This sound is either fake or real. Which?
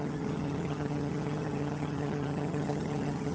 fake